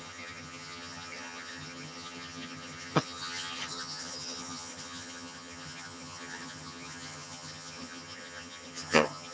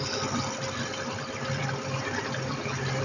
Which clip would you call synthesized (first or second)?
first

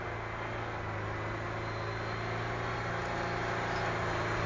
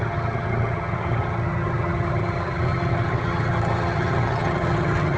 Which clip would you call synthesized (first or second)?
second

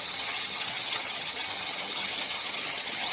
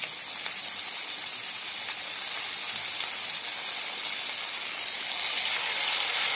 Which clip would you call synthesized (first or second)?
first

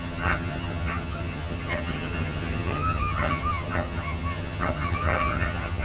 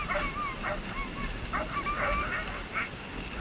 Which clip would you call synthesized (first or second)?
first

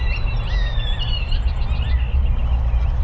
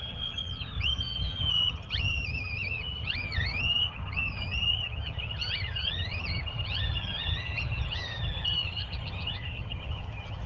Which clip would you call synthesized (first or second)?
second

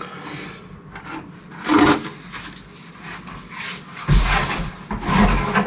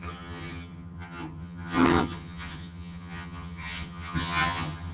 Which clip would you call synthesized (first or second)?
second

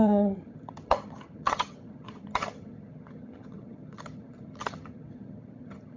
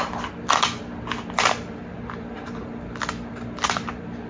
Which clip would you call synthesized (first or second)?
first